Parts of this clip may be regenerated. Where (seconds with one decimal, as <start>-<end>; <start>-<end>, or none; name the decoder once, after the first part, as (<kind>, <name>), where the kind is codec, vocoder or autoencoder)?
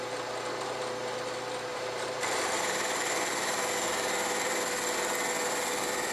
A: 1.7-3.7 (vocoder, BigVGAN v2)